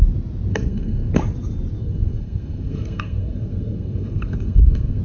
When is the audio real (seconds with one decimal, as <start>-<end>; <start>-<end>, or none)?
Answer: 0.0-0.5; 1.1-1.8